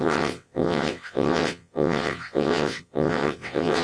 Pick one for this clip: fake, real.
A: fake